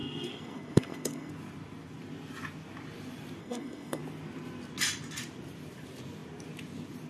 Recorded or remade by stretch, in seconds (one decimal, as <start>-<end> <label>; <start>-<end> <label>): 0.0-1.3 remade; 1.3-3.4 recorded; 3.4-4.0 remade; 4.0-7.1 recorded